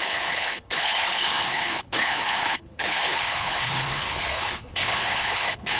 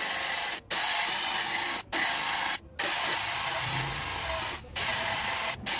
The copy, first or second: first